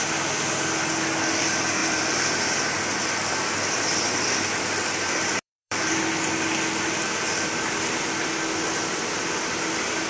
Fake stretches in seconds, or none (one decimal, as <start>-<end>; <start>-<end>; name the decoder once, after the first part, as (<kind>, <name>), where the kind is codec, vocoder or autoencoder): 1.8-7.1 (vocoder, BigVGAN v2)